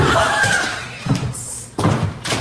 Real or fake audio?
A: fake